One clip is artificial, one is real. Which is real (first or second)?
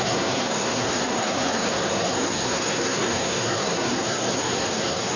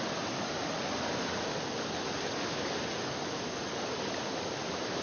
second